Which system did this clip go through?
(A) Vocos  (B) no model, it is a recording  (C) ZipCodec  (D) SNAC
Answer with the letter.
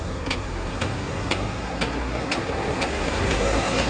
D